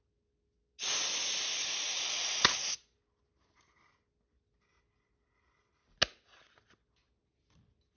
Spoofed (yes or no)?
no